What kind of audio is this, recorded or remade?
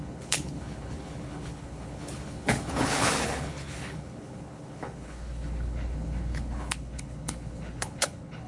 remade